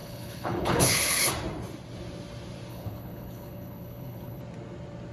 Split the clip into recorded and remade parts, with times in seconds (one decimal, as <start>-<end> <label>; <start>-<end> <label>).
0.0-1.3 remade; 1.3-2.7 recorded; 2.7-4.4 remade; 4.4-5.1 recorded